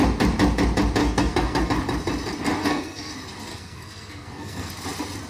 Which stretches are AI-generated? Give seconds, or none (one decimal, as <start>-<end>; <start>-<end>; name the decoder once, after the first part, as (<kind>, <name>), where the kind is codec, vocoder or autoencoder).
1.0-1.7 (codec, SNAC); 2.6-3.1; 3.5-4.7